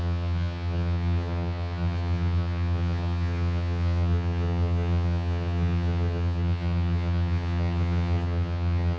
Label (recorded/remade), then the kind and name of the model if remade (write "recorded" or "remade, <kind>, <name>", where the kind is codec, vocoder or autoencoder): remade, vocoder, HiFi-GAN